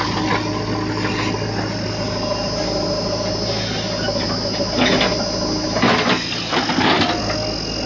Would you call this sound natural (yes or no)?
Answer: yes